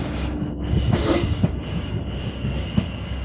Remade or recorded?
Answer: remade